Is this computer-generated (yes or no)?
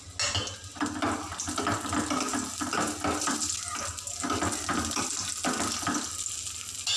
no